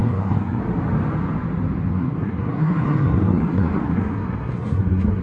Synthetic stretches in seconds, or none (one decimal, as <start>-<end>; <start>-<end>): 0.0-0.6; 1.9-5.2